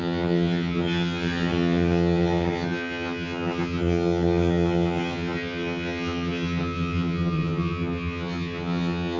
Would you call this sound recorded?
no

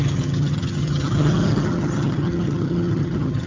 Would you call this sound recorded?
no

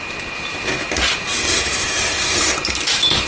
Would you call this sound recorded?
yes